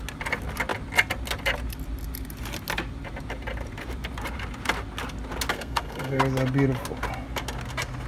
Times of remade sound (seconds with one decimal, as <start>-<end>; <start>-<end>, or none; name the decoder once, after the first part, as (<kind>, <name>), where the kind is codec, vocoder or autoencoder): 5.5-6.2 (codec, SNAC)